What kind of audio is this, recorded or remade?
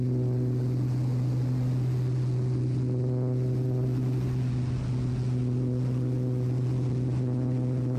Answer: recorded